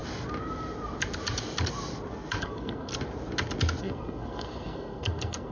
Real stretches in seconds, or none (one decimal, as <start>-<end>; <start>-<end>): 0.0-2.4; 2.9-3.8